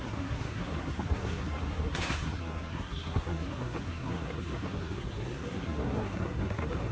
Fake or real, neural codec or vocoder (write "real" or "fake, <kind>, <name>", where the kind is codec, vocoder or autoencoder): fake, codec, SNAC